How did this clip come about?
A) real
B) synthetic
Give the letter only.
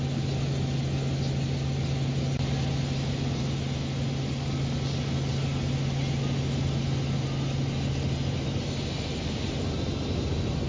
A